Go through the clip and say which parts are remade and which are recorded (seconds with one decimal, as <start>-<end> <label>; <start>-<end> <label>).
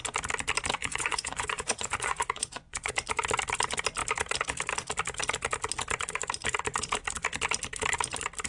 0.0-0.8 recorded; 0.8-2.9 remade; 2.9-8.5 recorded